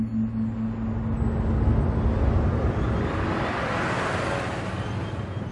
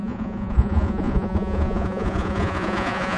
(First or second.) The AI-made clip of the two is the second